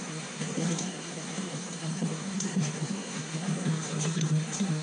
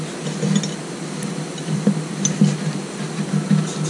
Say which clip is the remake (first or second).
first